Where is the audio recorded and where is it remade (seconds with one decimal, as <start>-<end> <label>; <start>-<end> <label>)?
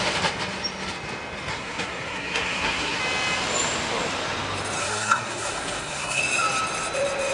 0.0-1.5 recorded; 1.5-3.0 remade; 3.0-4.8 recorded; 4.8-6.2 remade; 6.2-7.3 recorded